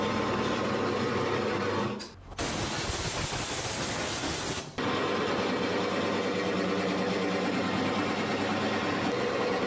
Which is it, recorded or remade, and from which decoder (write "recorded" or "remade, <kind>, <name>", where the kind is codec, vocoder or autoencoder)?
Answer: recorded